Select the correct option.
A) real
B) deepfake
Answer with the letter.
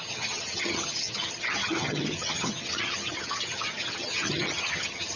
B